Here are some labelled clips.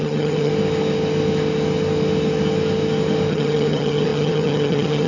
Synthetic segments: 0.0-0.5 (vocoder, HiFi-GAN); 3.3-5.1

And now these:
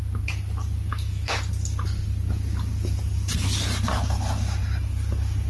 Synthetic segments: 0.9-1.4 (autoencoder, DAC-VAE)

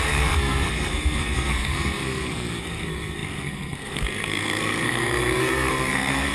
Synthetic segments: 0.0-6.3 (codec, SNAC)

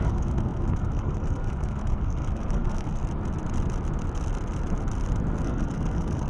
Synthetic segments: 0.0-3.0 (codec, SNAC); 5.4-6.3

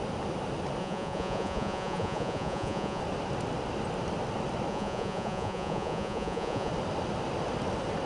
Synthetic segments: 0.8-3.0 (vocoder, Vocos); 4.7-6.7

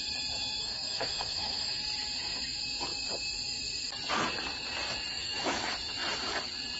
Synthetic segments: 0.6-1.8 (autoencoder, DAC-VAE); 5.1-5.7